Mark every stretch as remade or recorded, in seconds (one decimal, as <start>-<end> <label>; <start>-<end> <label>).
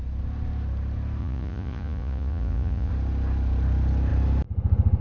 0.0-1.2 recorded; 1.2-2.9 remade; 2.9-5.0 recorded